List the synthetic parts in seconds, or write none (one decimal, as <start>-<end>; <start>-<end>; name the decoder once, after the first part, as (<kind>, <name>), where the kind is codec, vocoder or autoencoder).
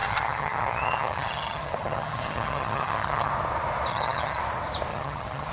0.0-3.3 (vocoder, HiFi-GAN); 3.9-4.4; 4.9-5.5